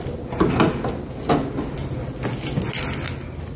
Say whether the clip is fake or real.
real